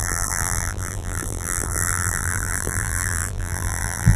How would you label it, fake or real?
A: fake